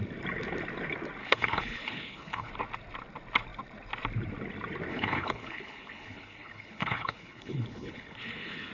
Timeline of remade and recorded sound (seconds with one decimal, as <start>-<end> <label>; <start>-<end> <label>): 0.0-1.2 recorded; 1.2-2.5 remade; 2.5-4.9 recorded; 4.9-8.7 remade